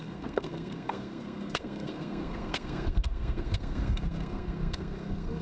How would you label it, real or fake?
fake